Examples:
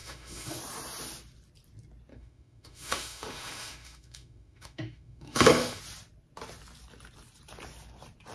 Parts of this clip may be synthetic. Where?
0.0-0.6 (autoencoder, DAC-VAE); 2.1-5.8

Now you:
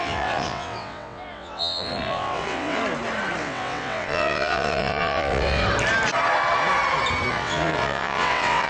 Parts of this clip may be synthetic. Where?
0.0-2.8 (vocoder, WaveNeXt); 3.4-5.6; 7.3-8.7

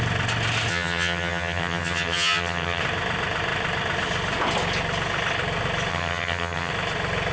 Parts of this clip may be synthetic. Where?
0.7-2.8 (vocoder, HiFi-GAN); 5.9-6.7

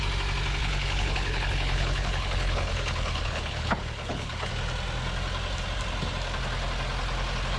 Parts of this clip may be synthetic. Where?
0.6-4.5 (codec, HILCodec)